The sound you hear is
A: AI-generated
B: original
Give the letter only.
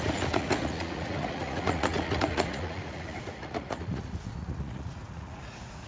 A